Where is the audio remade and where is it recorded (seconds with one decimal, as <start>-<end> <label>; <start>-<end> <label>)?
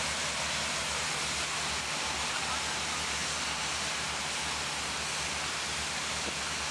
0.0-6.7 recorded